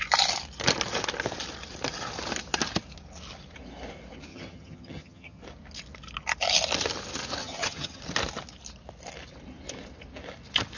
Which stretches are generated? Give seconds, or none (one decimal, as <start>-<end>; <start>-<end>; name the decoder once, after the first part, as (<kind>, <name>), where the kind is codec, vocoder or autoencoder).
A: 4.3-5.4 (vocoder, HiFi-GAN); 7.4-8.0